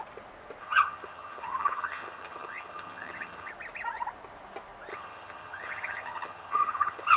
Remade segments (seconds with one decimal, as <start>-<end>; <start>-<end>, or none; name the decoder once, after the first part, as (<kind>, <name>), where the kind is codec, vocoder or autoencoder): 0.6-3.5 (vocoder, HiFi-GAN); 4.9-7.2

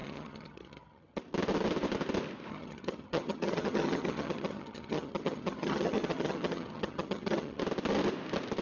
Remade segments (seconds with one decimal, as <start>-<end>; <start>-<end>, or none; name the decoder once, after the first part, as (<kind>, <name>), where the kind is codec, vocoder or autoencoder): 0.0-1.2 (vocoder, HiFi-GAN); 2.5-7.6

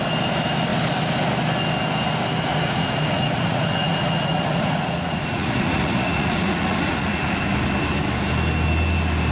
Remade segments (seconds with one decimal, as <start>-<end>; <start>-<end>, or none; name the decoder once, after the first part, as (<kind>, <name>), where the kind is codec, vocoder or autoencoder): 2.5-7.4 (vocoder, Vocos)

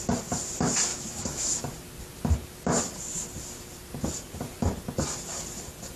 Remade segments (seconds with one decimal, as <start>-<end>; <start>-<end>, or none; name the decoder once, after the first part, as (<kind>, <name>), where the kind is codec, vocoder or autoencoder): 0.9-1.6 (autoencoder, DAC-VAE)

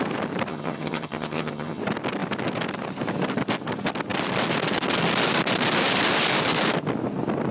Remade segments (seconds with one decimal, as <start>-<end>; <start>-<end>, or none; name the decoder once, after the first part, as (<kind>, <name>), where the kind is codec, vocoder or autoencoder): 0.5-1.8 (vocoder, HiFi-GAN)